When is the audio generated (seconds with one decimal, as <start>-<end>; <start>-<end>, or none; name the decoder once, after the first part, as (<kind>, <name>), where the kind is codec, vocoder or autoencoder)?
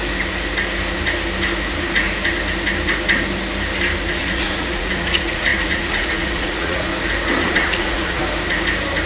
4.2-6.9 (vocoder, Vocos); 7.5-8.2